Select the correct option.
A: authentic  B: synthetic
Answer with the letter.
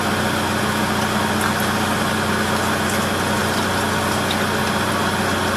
A